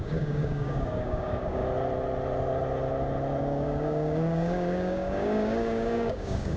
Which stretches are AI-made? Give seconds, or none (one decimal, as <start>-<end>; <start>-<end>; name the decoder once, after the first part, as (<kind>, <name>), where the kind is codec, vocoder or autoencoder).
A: 0.0-1.6 (codec, DAC); 3.4-6.6